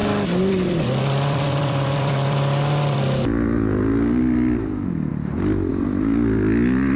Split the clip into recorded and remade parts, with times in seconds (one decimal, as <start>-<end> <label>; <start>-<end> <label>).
0.0-4.2 remade; 4.2-7.0 recorded